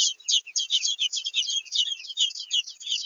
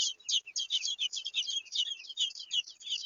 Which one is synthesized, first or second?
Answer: first